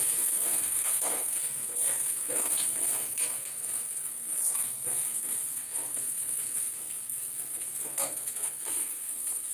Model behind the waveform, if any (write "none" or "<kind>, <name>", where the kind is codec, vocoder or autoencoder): codec, SNAC